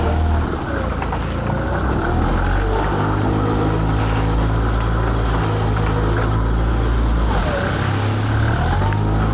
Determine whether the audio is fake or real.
real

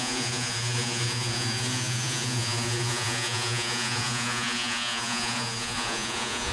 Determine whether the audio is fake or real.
fake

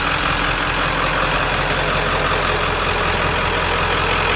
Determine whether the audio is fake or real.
real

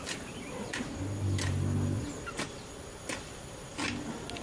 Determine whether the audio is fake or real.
real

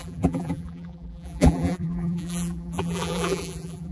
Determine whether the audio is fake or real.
fake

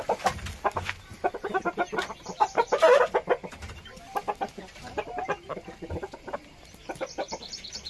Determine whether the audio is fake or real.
real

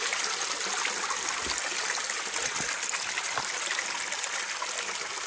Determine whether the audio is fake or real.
real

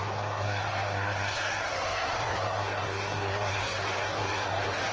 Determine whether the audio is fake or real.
fake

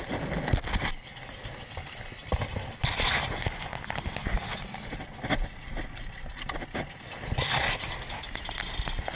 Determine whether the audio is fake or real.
real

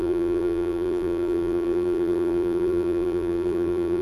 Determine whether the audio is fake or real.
fake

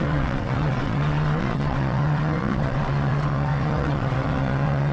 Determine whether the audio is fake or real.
fake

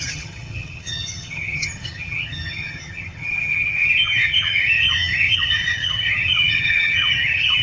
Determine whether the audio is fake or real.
fake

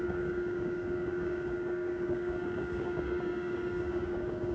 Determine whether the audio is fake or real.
fake